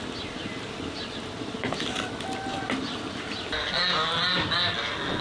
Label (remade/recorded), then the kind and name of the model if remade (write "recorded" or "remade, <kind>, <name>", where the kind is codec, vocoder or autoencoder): recorded